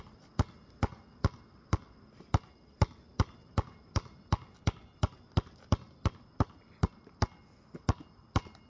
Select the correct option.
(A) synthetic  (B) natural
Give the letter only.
B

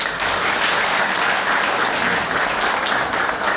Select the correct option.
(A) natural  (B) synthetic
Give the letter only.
A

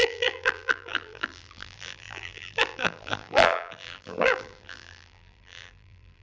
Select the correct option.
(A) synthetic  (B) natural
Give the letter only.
A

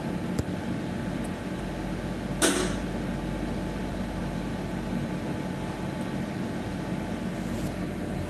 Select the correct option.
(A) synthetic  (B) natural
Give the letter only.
B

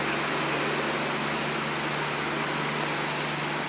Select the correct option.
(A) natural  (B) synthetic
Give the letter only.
A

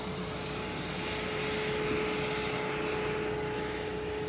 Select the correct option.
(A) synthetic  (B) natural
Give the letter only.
B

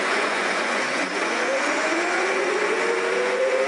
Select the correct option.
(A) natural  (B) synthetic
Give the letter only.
B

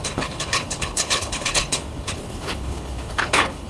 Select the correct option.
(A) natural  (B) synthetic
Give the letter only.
B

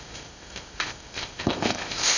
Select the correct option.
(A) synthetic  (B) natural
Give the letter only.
A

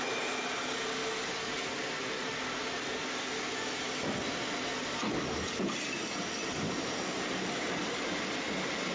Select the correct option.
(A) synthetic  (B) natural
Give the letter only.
B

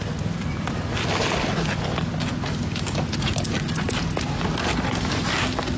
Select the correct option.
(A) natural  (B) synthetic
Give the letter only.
A